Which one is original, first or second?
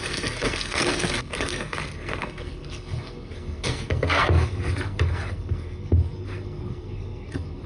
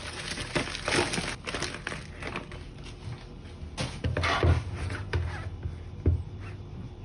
second